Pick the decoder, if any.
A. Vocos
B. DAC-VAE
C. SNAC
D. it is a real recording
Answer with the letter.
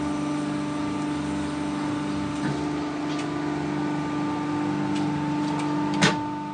D